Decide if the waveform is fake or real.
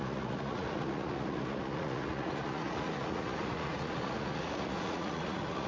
fake